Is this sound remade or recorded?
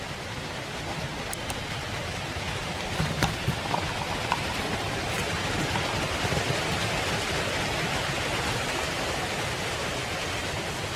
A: recorded